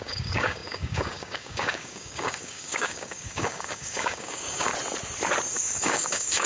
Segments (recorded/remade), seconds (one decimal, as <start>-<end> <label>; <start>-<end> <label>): 0.0-4.7 remade; 4.7-5.5 recorded; 5.5-6.5 remade